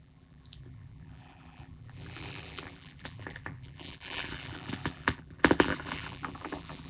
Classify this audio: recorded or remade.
remade